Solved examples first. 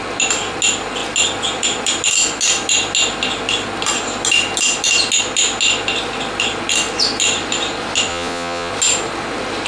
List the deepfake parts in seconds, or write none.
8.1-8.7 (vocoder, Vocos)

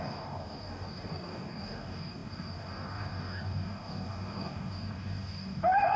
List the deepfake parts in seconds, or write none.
0.0-6.0 (codec, DAC)